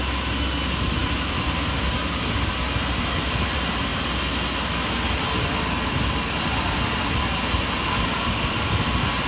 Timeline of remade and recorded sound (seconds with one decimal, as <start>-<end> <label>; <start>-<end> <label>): 0.0-9.3 recorded